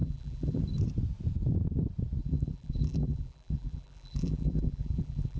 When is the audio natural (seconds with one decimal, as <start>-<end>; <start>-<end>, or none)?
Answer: 0.6-2.2